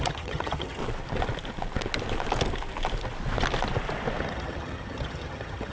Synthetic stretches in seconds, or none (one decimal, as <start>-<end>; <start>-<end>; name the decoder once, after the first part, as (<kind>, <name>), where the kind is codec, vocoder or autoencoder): 0.0-0.8 (vocoder, HiFi-GAN); 4.2-5.7